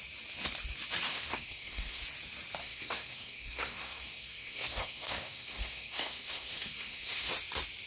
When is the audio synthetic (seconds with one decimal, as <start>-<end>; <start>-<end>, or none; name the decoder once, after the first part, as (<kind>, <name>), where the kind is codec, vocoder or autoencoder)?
1.1-2.0 (codec, SNAC); 2.6-7.3